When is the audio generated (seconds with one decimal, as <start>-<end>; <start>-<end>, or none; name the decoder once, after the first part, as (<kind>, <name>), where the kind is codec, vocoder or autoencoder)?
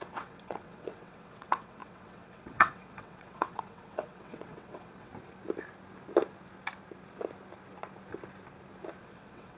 0.0-5.1 (vocoder, WaveNeXt); 9.0-9.6